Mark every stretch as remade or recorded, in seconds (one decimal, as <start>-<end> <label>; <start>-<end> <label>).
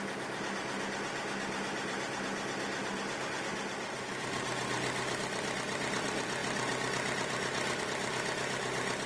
0.0-9.1 recorded